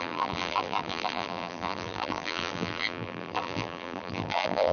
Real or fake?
fake